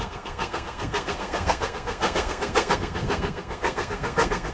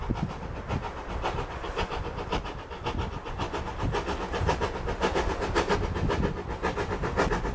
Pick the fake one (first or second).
first